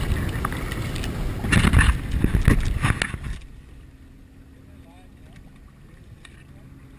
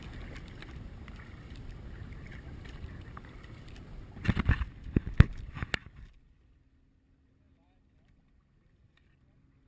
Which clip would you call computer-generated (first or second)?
second